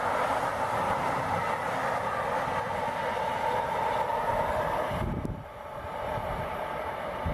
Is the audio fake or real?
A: real